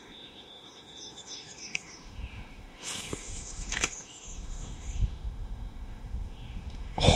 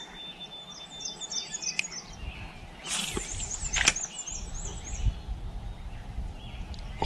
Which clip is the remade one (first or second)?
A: first